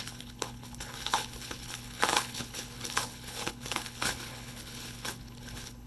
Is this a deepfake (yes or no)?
yes